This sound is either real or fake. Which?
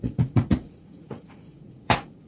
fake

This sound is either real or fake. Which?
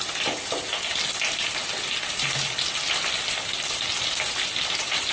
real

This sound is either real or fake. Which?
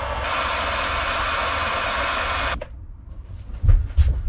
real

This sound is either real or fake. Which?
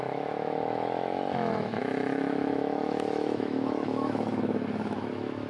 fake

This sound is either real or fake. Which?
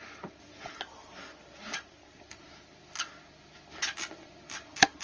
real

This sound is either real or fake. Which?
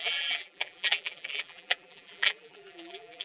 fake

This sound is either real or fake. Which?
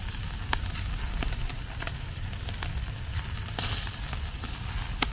real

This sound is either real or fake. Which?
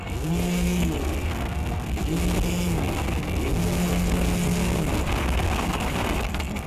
fake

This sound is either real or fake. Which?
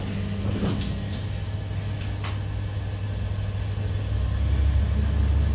real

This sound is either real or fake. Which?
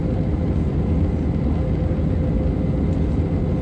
real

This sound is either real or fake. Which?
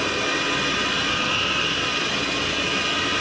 real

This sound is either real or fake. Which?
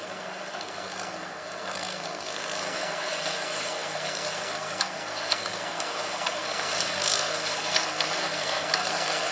fake